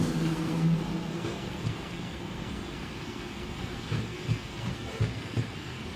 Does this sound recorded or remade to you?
remade